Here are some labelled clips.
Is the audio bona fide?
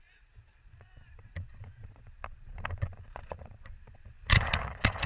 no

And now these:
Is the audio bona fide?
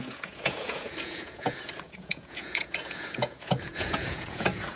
no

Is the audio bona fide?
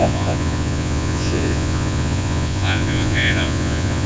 no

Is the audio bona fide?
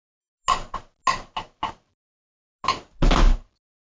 yes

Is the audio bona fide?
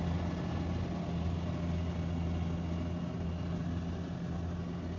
yes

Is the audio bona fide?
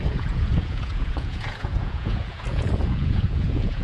no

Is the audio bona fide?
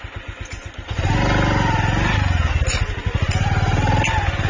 yes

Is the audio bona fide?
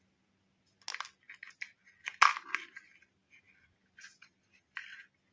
yes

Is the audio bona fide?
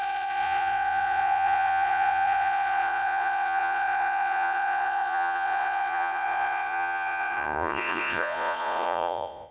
no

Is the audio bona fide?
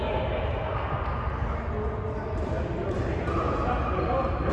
yes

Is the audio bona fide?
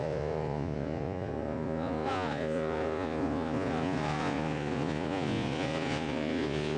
no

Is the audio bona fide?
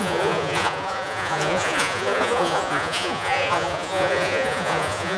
no